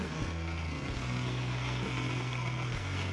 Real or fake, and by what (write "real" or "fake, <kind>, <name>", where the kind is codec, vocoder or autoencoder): fake, codec, SNAC